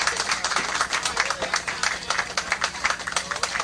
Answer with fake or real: fake